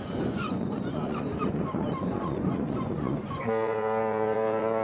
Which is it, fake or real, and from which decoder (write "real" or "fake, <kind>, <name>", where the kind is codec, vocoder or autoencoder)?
fake, vocoder, Vocos